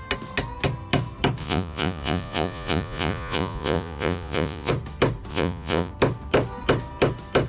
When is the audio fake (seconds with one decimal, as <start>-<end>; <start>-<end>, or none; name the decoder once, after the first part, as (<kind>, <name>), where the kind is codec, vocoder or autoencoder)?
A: 1.4-4.7 (vocoder, Vocos); 5.3-5.9